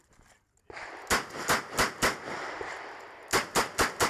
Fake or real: real